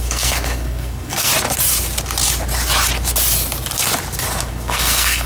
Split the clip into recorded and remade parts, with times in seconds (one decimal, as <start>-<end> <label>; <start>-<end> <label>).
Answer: 0.0-1.3 remade; 1.3-4.5 recorded; 4.5-5.3 remade